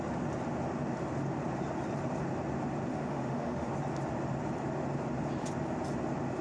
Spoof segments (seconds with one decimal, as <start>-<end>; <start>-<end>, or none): 2.9-3.7

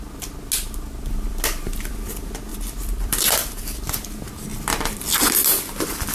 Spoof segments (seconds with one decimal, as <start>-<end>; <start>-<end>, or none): 2.5-3.6; 4.5-6.1

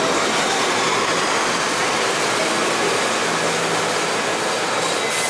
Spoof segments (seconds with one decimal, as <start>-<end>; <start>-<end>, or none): none

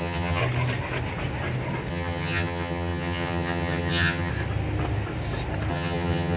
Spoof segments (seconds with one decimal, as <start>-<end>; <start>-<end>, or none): 0.0-0.4; 1.9-4.3; 5.7-6.4

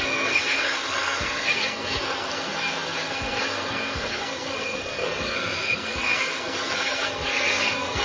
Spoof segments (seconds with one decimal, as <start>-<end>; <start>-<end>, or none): 0.0-8.0

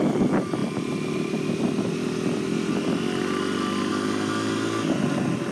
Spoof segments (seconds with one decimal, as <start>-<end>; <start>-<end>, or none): none

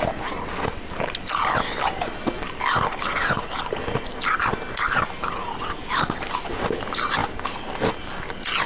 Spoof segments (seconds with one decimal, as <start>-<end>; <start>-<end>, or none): none

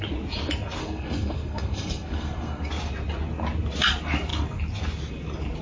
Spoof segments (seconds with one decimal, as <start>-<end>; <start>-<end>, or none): 0.8-2.7